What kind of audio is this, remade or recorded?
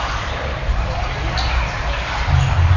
recorded